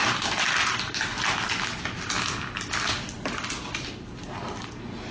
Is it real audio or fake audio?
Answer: real